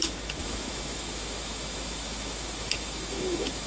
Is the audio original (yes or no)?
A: no